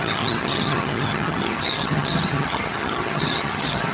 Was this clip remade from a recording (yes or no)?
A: yes